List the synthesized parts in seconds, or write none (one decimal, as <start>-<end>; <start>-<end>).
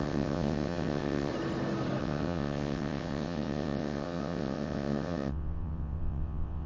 0.0-1.3; 2.0-6.7